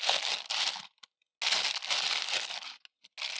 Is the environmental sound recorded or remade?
recorded